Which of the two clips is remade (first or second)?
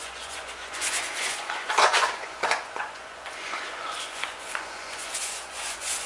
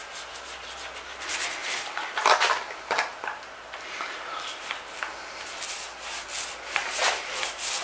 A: first